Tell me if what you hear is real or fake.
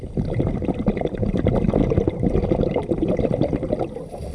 real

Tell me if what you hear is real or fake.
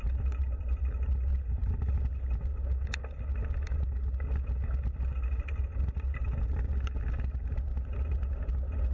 real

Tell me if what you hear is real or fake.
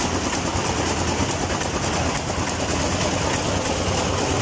real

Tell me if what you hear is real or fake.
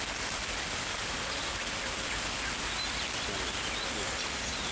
real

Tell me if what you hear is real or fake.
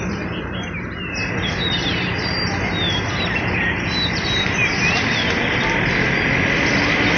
real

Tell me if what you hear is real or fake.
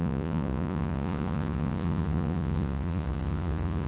fake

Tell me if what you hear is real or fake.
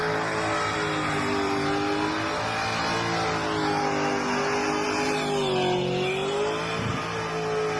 real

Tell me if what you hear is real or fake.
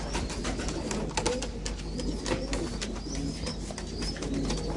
real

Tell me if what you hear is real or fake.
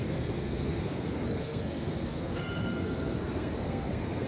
fake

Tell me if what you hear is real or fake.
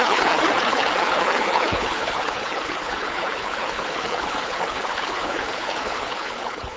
fake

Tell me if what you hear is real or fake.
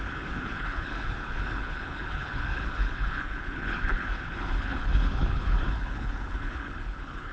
fake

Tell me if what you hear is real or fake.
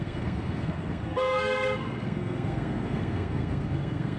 fake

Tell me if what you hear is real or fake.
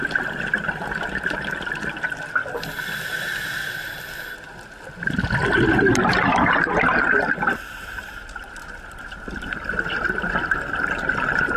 real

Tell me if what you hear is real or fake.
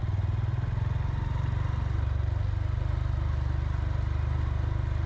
real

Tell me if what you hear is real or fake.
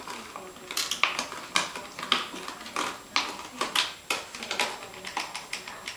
real